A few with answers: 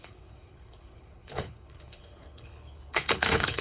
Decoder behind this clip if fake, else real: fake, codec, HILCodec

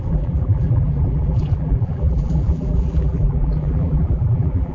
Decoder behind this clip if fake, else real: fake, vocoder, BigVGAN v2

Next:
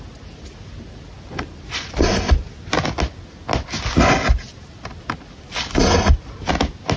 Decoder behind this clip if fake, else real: real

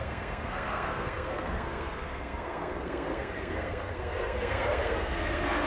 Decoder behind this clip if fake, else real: fake, codec, SNAC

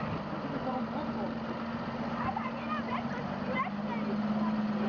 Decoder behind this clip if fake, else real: real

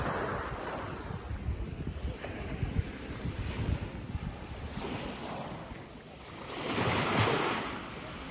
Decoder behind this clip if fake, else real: real